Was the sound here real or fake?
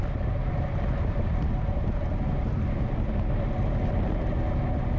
real